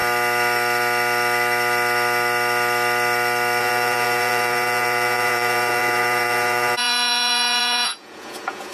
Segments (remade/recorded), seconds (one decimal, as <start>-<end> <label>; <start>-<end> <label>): 0.0-3.6 recorded; 3.6-8.7 remade